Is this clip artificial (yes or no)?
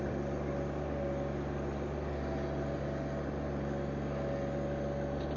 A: no